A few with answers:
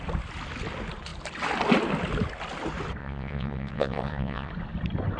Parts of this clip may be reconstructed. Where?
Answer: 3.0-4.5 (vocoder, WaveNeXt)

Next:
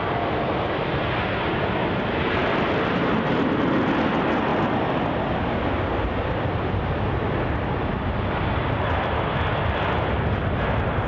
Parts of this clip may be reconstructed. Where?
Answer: none